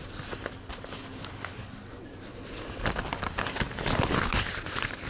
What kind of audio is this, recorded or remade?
recorded